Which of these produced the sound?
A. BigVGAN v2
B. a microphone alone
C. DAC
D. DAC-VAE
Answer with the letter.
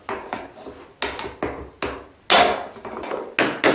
B